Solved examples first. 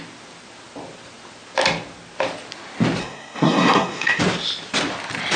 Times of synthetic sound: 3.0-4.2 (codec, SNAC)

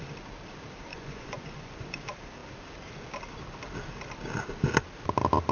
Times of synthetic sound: 0.9-1.9 (vocoder, Vocos)

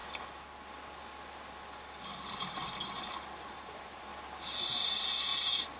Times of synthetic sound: 3.5-4.1 (vocoder, BigVGAN v2); 4.6-5.8

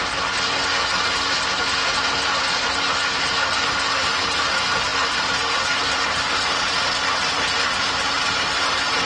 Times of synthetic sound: 4.0-9.1 (vocoder, BigVGAN v2)